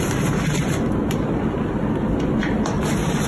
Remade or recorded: recorded